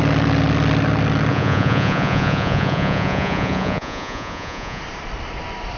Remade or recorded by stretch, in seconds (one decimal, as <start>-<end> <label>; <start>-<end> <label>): 0.0-1.3 recorded; 1.3-4.8 remade; 4.8-5.8 recorded